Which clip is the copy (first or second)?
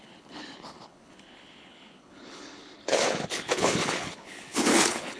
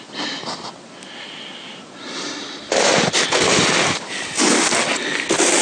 first